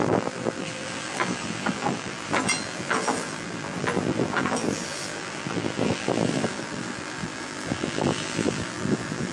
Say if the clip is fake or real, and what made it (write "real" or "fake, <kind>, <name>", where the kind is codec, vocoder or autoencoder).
fake, vocoder, BigVGAN v2